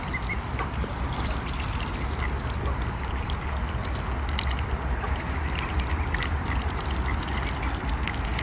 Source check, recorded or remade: recorded